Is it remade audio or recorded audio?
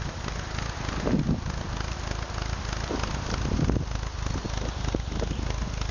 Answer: recorded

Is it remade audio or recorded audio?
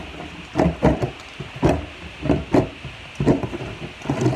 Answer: recorded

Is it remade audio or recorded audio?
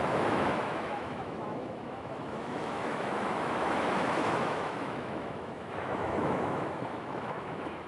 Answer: remade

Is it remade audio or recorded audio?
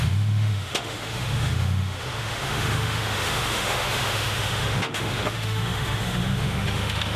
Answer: remade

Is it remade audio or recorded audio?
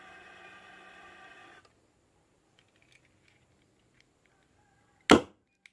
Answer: recorded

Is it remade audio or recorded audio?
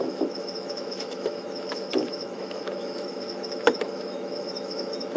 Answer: remade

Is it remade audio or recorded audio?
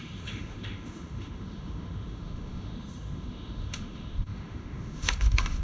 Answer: remade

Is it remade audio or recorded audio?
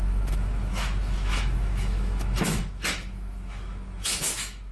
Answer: remade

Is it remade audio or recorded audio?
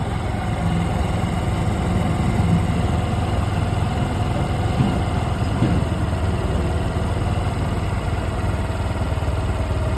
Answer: recorded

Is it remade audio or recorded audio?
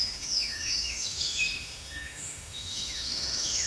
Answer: remade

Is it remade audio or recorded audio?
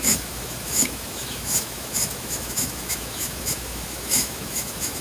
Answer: remade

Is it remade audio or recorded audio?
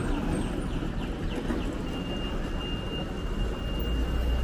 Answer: recorded